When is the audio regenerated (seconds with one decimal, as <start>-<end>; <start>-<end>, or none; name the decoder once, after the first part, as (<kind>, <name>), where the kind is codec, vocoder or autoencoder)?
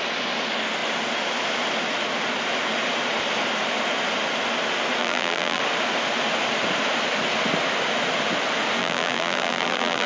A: 5.0-5.6 (vocoder, BigVGAN v2); 8.8-10.1